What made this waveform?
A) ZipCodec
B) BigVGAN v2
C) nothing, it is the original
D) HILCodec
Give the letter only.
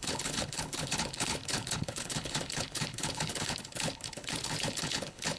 D